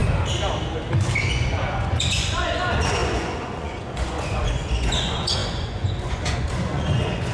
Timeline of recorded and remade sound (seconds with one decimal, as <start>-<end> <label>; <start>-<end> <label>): 0.0-1.2 recorded; 1.2-7.3 remade

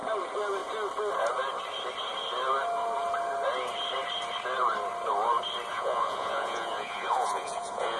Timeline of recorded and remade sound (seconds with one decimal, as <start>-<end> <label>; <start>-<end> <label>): 0.0-5.7 recorded; 5.7-8.0 remade

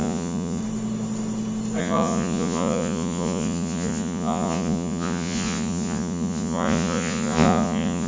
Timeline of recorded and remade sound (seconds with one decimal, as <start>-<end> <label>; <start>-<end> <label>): 0.0-0.6 remade; 0.6-1.8 recorded; 1.8-8.1 remade

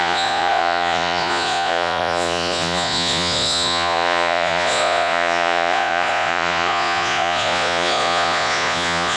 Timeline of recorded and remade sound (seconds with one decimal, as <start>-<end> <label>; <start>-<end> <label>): 0.0-9.2 remade

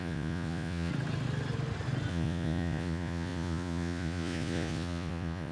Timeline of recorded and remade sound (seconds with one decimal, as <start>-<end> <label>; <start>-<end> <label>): 0.0-0.9 remade; 0.9-2.1 recorded; 2.1-5.5 remade

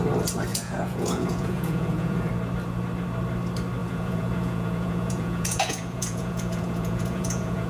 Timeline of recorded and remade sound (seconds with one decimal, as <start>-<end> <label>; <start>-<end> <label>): 0.0-0.5 recorded; 0.5-2.3 remade; 2.3-3.8 recorded; 3.8-7.7 remade

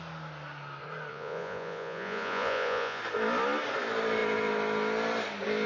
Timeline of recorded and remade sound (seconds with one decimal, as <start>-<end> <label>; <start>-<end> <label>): 0.0-1.1 recorded; 1.1-3.0 remade; 3.0-5.7 recorded